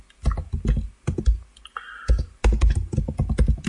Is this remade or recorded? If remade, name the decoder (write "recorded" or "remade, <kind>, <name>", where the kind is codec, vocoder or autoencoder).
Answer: recorded